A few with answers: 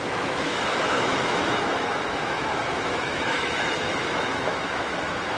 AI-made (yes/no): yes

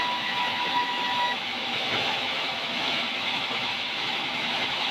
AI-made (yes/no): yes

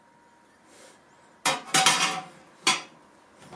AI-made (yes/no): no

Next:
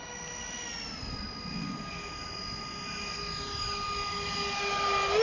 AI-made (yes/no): no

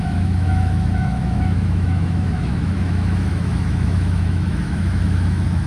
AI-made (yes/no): yes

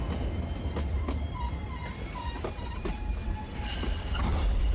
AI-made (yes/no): no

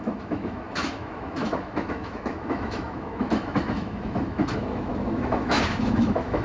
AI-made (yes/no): yes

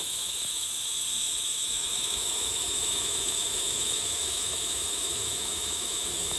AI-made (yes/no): yes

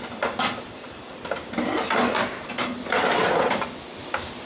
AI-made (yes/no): no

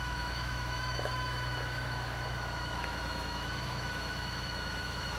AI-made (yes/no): yes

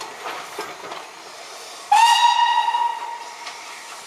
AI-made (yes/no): no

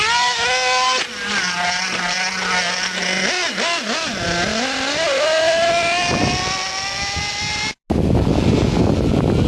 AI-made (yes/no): no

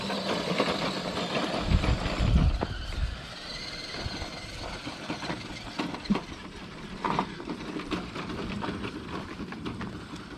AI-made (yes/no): no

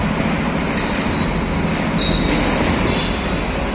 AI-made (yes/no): no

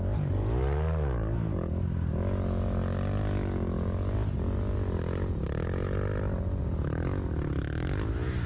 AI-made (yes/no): no